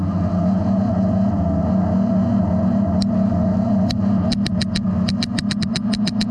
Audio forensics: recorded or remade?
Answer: recorded